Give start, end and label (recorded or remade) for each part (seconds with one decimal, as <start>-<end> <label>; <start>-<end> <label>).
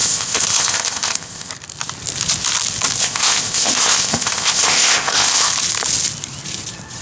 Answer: 0.0-1.5 remade; 1.5-3.0 recorded; 3.0-5.5 remade; 5.5-7.0 recorded